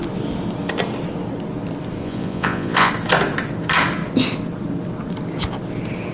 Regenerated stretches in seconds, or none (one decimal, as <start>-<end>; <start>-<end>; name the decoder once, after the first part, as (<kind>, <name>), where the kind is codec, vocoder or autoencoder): 2.0-2.9 (vocoder, Vocos)